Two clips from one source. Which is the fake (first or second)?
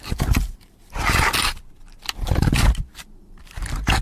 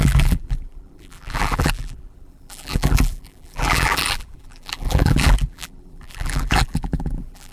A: second